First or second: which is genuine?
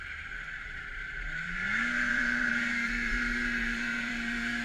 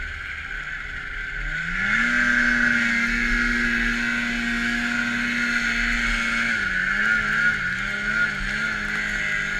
second